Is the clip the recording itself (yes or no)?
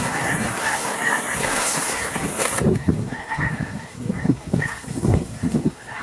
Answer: no